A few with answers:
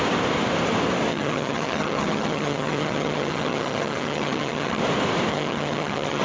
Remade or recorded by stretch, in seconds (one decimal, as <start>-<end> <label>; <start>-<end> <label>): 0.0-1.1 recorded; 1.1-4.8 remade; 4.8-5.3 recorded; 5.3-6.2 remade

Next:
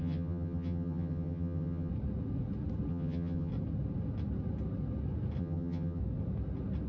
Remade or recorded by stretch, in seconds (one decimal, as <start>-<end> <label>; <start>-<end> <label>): 0.0-1.9 remade; 1.9-2.9 recorded; 2.9-3.5 remade; 3.5-5.4 recorded; 5.4-6.0 remade; 6.0-6.9 recorded

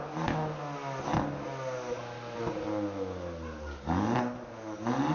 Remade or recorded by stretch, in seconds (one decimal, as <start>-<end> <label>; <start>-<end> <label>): 0.0-5.1 recorded

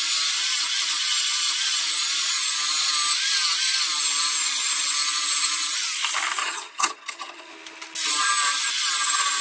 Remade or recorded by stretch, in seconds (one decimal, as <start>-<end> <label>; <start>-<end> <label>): 0.0-6.4 recorded; 6.4-7.5 remade; 7.5-9.4 recorded

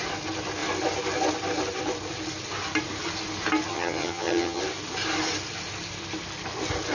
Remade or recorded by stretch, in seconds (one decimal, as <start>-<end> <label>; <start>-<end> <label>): 0.0-3.7 recorded; 3.7-4.6 remade; 4.6-6.9 recorded

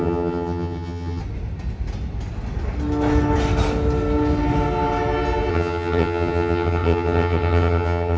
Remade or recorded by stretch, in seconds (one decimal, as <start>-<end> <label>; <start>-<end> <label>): 0.0-1.2 remade; 1.2-5.5 recorded; 5.5-8.2 remade